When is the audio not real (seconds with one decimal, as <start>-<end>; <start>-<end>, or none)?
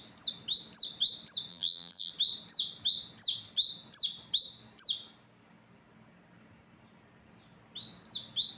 1.5-2.1